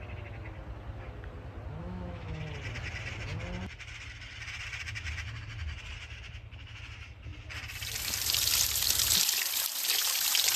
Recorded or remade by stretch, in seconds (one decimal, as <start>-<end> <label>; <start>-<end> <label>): 0.0-1.8 recorded; 1.8-2.4 remade; 2.4-10.6 recorded